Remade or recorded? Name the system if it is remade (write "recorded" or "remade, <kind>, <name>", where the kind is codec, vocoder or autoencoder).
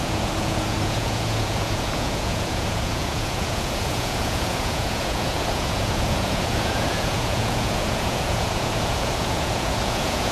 remade, vocoder, Vocos